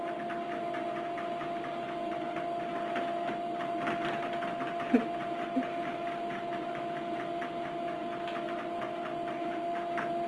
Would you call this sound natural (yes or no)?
yes